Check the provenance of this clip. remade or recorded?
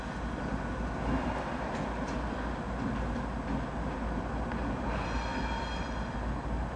recorded